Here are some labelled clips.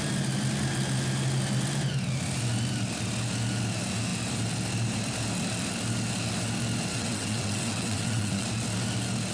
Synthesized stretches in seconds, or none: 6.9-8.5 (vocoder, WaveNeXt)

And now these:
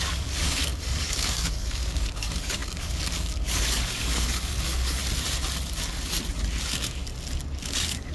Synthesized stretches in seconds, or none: 0.0-5.0 (codec, DAC); 6.6-7.0; 7.6-8.1

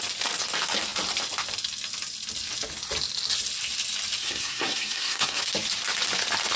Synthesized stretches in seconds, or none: 4.2-5.4 (codec, SNAC)

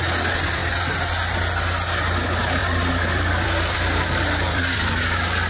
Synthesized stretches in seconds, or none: 2.6-5.0 (vocoder, BigVGAN v2)

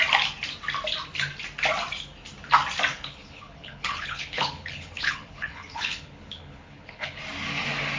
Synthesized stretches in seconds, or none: 2.9-7.2 (codec, HILCodec)

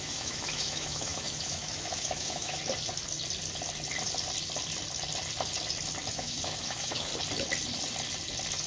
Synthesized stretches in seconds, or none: 0.0-2.6 (autoencoder, DAC-VAE); 6.1-7.1

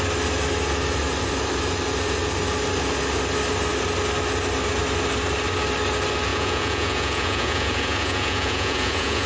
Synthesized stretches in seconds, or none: 6.3-9.3 (vocoder, Vocos)

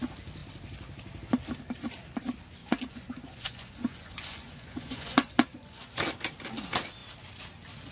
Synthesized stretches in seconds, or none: 2.6-6.0 (vocoder, Vocos)